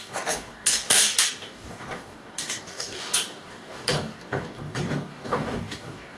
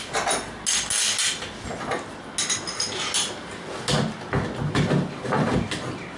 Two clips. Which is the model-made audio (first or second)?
first